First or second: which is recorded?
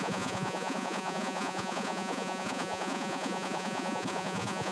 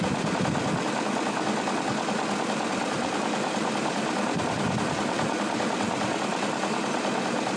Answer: second